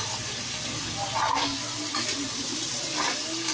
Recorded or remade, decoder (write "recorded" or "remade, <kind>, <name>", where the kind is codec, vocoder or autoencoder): recorded